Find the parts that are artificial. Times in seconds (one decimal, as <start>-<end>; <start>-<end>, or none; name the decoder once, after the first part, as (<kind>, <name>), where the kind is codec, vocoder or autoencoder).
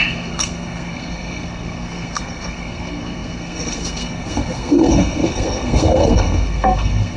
0.0-7.2 (codec, SNAC)